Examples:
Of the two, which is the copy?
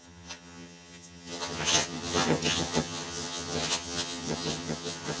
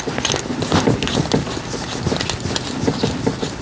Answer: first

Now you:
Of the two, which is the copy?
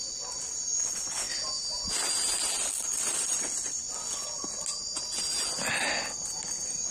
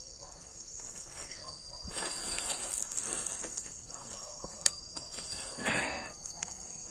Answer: second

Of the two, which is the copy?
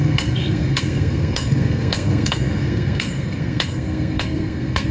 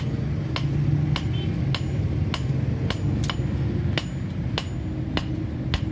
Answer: first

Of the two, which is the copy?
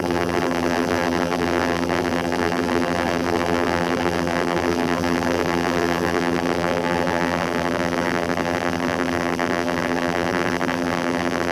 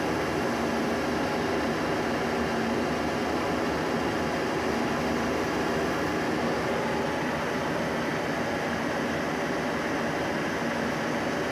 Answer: first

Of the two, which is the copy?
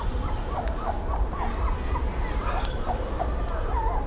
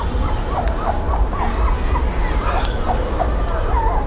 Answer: first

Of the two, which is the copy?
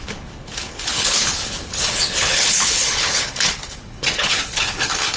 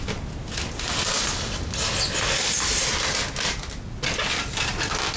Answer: first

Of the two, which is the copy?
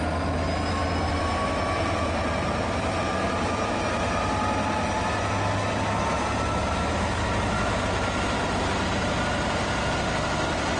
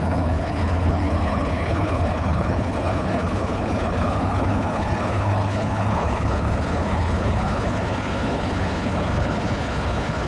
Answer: second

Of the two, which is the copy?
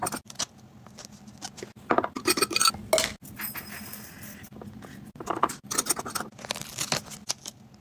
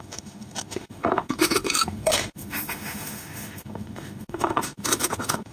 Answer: second